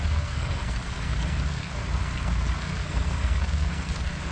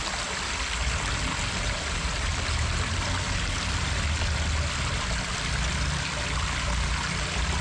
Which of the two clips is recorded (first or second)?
second